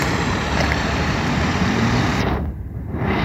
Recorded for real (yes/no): no